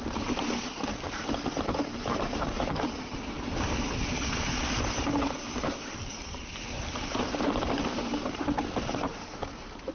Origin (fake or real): fake